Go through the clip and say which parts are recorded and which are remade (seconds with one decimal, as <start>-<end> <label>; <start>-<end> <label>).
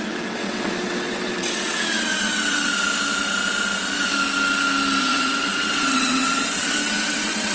0.0-2.7 remade; 2.7-5.0 recorded; 5.0-7.5 remade